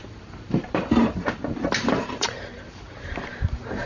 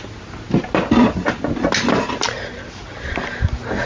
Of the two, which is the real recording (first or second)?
second